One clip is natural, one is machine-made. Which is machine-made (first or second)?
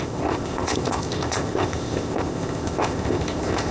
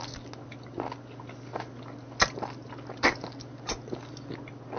first